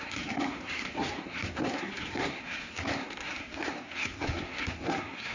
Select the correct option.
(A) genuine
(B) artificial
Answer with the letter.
B